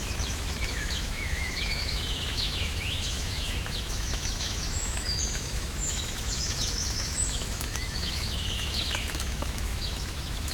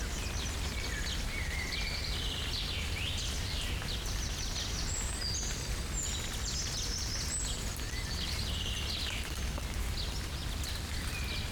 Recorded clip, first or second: second